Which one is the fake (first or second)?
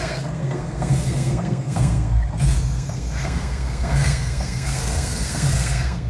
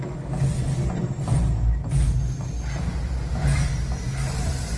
first